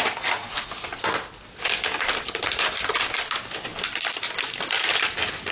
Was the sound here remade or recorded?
recorded